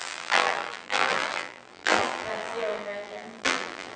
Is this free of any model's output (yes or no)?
no